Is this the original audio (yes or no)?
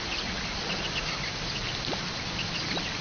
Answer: yes